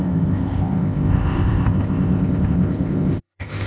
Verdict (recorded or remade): remade